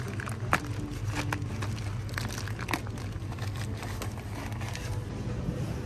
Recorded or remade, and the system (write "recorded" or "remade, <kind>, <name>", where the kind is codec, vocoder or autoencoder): recorded